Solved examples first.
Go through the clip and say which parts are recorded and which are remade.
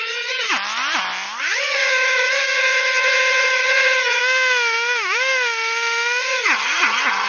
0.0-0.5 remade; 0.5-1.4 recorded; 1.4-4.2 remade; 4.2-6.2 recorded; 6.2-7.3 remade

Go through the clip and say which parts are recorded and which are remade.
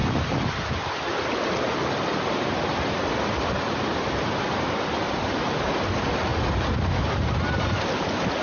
0.0-4.8 remade; 4.8-6.3 recorded; 6.3-7.8 remade; 7.8-8.4 recorded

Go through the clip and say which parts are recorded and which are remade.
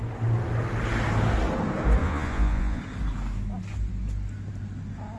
0.0-2.0 recorded; 2.0-2.8 remade; 2.8-5.2 recorded